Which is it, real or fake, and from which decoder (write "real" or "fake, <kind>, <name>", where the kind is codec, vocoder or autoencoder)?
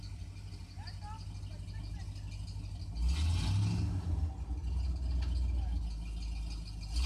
real